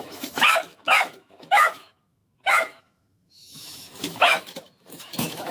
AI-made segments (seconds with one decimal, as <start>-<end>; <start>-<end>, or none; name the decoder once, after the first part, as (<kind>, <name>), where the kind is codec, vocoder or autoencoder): 0.0-5.5 (autoencoder, DAC-VAE)